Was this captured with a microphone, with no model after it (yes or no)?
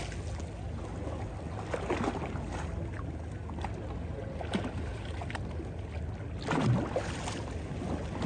yes